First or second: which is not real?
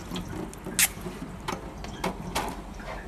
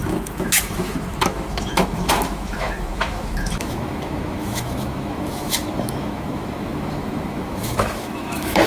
second